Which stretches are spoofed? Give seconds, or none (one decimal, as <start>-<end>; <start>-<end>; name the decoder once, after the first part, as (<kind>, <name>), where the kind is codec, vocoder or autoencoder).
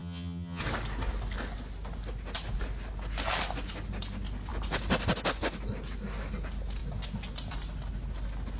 0.0-0.6 (vocoder, HiFi-GAN)